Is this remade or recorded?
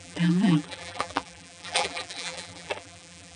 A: remade